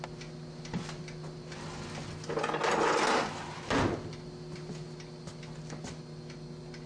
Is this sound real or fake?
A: real